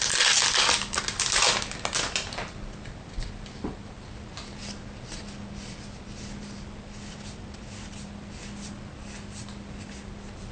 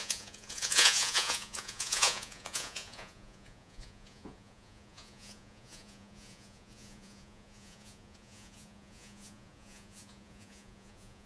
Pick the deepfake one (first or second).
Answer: second